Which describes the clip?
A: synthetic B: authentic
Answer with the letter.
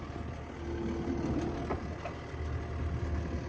B